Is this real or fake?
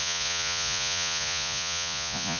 fake